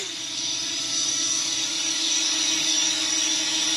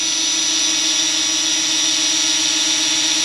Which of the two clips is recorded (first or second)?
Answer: second